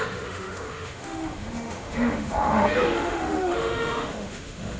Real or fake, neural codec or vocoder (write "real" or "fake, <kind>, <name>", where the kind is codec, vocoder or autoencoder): fake, autoencoder, DAC-VAE